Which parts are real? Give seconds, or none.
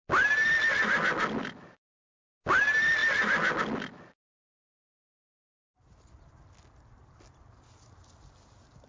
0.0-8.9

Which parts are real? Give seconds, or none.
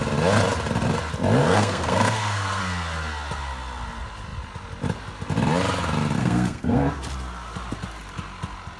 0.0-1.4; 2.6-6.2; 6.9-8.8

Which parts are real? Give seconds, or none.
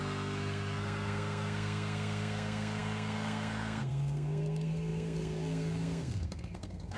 none